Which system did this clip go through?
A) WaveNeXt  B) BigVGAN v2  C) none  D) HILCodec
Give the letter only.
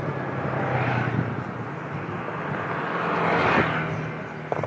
C